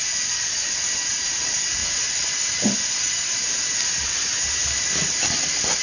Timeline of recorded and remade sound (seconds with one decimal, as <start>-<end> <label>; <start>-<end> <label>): 0.0-5.8 recorded